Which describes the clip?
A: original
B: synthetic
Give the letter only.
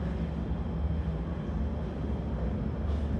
A